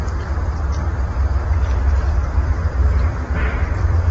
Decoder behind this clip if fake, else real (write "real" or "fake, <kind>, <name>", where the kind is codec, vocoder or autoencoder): fake, vocoder, BigVGAN v2